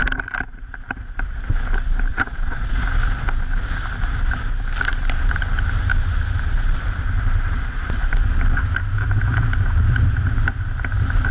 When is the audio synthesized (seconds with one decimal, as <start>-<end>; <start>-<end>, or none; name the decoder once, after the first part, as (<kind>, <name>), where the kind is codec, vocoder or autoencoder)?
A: 2.1-2.7 (vocoder, Vocos)

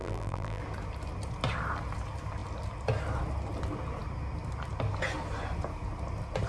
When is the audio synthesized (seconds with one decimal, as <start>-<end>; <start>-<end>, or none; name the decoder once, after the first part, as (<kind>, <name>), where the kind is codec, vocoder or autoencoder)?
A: 0.0-0.6 (vocoder, BigVGAN v2)

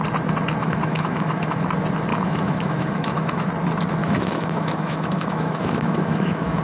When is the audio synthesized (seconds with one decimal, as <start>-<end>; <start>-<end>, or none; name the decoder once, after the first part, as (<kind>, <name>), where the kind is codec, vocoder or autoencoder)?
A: 0.6-1.7 (autoencoder, DAC-VAE); 2.1-3.5; 4.0-6.6

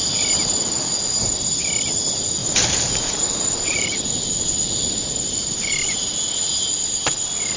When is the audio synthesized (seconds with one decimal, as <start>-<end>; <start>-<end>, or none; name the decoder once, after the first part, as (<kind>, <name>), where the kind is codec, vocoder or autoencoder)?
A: 0.0-0.9 (vocoder, BigVGAN v2); 2.4-4.0

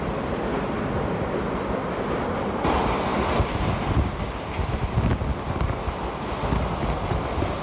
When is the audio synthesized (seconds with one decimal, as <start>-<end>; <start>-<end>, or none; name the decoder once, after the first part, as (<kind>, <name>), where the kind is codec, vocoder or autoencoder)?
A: none